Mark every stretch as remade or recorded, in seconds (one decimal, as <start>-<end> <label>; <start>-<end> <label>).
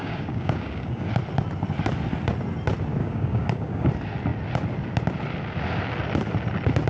0.0-1.1 remade; 1.1-3.0 recorded; 3.0-3.9 remade; 3.9-6.9 recorded